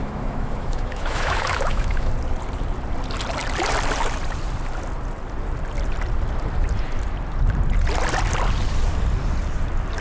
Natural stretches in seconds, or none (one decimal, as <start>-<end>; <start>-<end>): 2.1-10.0